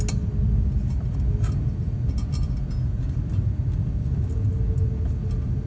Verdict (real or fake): real